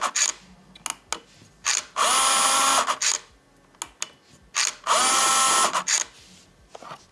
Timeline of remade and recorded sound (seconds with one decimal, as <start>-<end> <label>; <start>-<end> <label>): 0.0-7.1 recorded